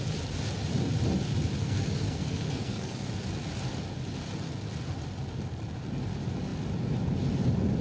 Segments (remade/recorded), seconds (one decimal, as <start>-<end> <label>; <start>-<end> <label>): 0.0-1.6 recorded; 1.6-3.1 remade; 3.1-7.8 recorded